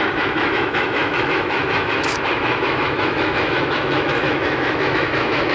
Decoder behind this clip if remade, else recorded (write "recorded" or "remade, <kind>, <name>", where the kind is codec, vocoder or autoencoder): remade, autoencoder, DAC-VAE